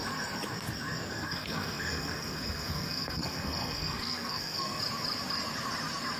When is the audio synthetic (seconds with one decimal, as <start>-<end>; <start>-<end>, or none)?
1.1-4.8